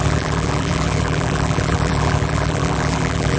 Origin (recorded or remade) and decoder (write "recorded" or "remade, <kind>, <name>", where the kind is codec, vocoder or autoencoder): remade, vocoder, BigVGAN v2